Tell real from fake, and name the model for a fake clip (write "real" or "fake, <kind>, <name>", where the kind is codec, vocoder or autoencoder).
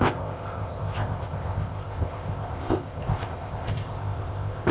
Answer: fake, codec, ZipCodec